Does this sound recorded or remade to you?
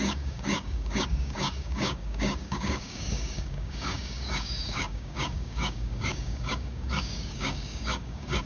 remade